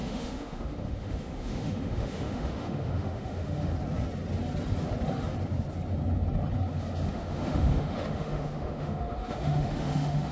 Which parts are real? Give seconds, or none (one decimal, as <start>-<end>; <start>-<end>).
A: 3.7-7.1